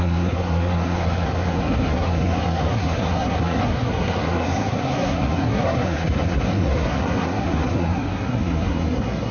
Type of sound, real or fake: fake